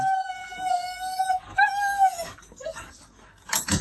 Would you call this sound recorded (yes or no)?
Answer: no